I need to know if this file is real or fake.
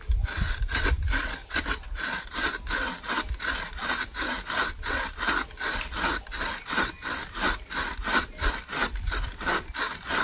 real